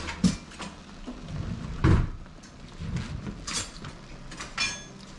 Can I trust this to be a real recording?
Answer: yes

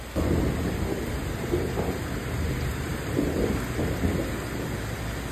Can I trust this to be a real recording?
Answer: yes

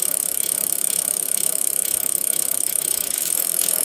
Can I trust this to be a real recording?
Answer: no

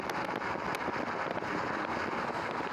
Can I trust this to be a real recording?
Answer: yes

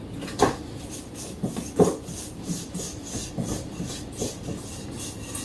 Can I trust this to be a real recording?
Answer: yes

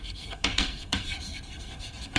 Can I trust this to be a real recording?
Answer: no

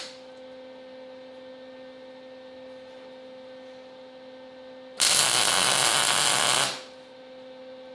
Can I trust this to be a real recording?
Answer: yes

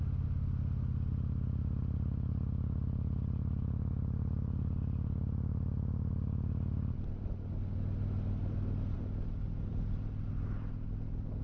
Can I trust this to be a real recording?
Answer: yes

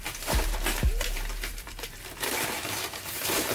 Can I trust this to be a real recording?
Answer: no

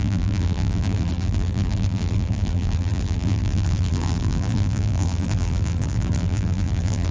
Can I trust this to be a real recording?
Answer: no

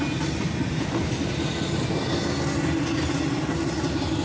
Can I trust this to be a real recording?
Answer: yes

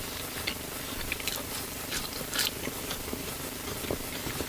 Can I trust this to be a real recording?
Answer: no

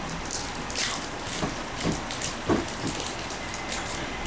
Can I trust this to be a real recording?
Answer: yes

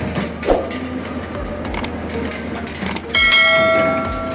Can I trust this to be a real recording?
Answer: yes